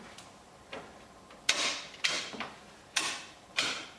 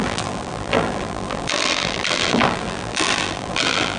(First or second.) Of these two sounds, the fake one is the second